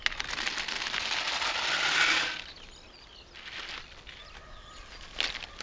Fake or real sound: real